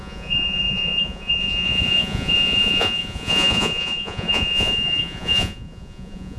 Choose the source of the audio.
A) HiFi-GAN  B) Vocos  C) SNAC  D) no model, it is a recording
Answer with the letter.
B